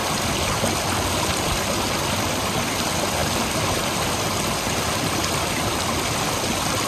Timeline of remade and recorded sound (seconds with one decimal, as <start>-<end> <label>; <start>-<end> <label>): 0.0-6.9 recorded

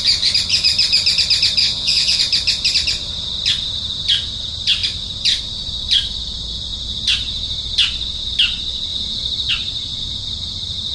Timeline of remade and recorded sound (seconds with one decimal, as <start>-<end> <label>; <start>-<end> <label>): 0.0-1.6 recorded; 1.6-2.2 remade; 2.2-10.9 recorded

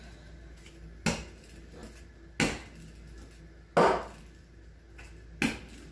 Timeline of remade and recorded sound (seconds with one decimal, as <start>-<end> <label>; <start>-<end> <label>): 0.0-5.9 recorded